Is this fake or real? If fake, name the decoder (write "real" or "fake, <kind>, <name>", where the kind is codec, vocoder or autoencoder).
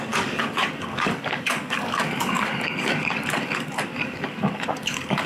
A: fake, codec, DAC